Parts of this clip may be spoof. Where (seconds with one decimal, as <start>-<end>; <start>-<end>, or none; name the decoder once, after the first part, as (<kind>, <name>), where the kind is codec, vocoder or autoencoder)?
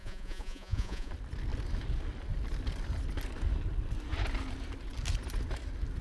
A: 0.0-1.1 (vocoder, Vocos)